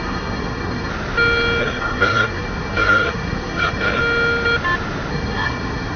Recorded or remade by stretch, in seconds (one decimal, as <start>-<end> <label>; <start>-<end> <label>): 0.0-0.9 remade; 0.9-1.6 recorded; 1.6-4.0 remade; 4.0-5.1 recorded; 5.1-6.0 remade